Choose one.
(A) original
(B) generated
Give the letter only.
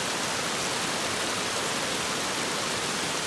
A